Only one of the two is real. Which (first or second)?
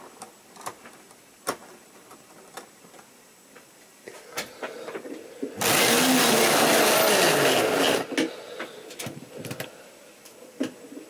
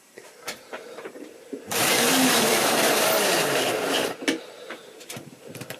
first